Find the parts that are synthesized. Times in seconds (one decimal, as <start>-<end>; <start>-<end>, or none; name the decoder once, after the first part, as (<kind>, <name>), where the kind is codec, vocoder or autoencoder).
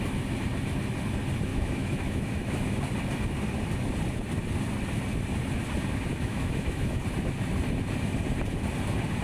1.5-2.8 (autoencoder, DAC-VAE); 6.1-7.0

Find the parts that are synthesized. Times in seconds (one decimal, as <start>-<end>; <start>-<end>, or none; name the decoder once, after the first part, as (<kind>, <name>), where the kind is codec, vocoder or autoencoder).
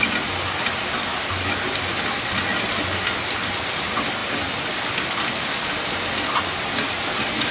none